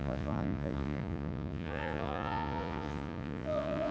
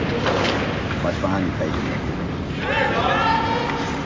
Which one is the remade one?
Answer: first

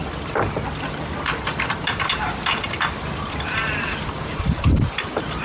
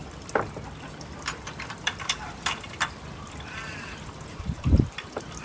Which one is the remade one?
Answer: second